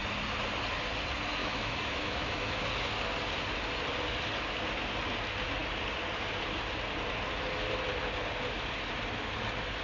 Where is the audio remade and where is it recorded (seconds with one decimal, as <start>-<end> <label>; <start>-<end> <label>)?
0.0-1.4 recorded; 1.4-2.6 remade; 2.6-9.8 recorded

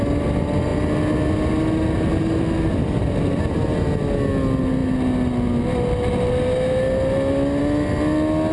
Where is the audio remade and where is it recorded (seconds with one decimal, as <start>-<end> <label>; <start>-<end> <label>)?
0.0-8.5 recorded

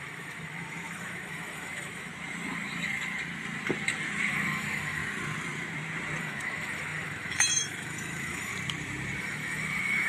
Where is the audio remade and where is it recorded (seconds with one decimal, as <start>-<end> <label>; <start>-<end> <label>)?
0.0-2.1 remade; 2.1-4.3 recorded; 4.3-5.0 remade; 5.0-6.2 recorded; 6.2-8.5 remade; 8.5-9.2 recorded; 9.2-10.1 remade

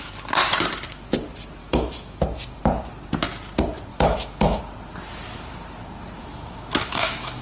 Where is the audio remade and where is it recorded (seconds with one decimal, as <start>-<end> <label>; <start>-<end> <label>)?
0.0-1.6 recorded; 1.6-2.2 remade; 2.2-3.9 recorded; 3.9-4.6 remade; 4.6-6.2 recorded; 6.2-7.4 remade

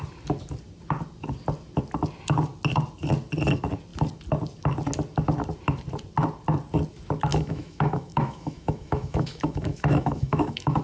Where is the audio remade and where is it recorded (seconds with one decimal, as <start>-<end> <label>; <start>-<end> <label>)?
0.0-7.3 recorded; 7.3-10.8 remade